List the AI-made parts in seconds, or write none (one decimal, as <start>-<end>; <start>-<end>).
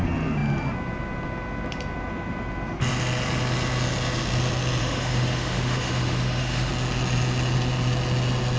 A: 4.8-6.7